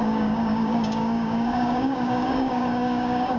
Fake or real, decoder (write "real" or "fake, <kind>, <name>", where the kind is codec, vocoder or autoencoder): fake, codec, DAC